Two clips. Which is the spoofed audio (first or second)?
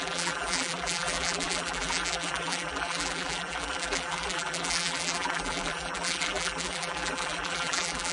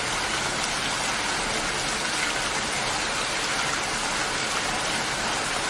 first